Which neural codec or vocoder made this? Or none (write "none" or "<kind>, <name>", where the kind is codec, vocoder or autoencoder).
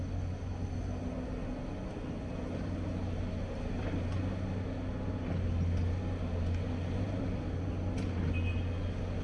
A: none